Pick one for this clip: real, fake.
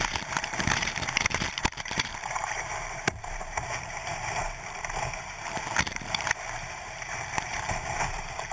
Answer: fake